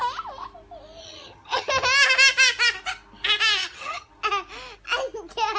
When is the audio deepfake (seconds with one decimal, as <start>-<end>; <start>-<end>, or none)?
1.0-1.7; 3.6-4.1